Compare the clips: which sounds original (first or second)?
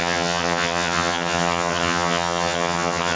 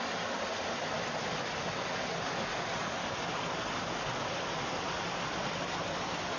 second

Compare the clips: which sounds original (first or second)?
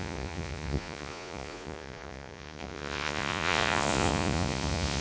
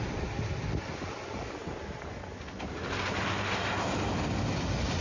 second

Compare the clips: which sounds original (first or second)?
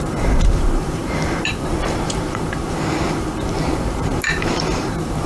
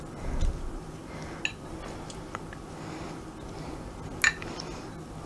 second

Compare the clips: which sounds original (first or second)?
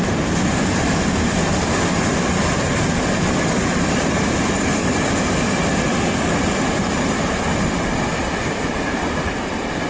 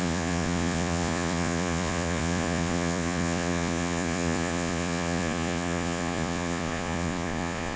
first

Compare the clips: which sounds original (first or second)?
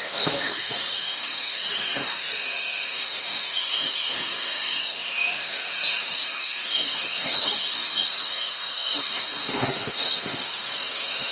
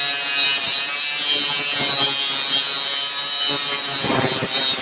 second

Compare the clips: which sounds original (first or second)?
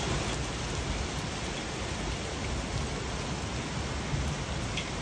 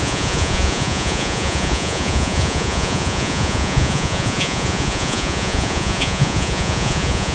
first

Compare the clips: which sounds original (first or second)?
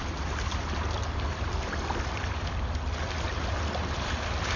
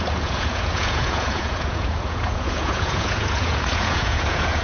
first